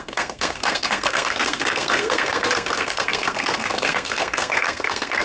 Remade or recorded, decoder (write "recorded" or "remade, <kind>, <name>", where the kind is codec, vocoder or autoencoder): remade, codec, SNAC